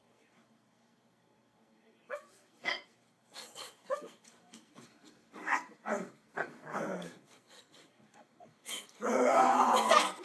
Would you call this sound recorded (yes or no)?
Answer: no